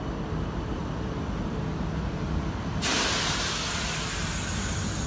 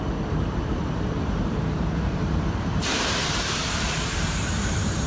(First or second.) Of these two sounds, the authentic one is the first